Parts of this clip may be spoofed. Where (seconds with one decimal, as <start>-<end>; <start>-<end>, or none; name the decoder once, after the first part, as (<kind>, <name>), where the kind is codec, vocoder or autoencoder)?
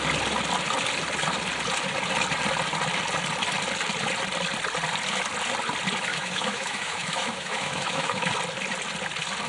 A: 6.1-8.3 (autoencoder, DAC-VAE)